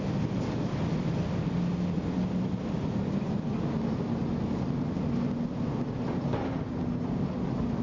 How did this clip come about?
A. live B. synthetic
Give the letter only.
A